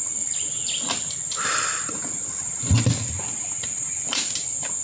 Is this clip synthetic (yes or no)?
no